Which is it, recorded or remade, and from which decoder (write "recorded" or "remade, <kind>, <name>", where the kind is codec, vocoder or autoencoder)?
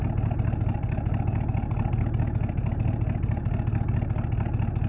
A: recorded